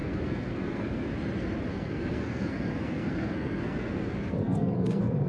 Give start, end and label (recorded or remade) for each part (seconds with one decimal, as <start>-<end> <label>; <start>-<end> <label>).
0.0-1.1 remade; 1.1-1.7 recorded; 1.7-5.3 remade